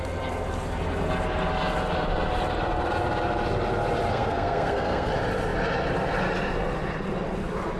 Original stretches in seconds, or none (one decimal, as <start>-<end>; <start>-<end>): 0.0-4.1; 5.1-7.8